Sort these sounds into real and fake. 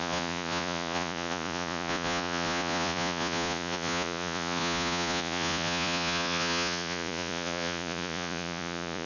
fake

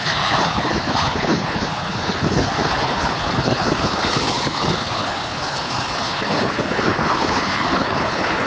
fake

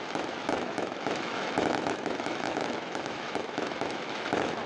fake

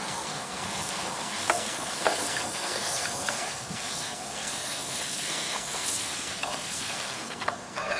fake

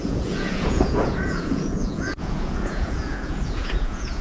fake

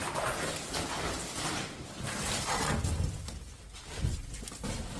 real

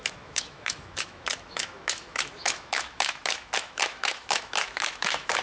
fake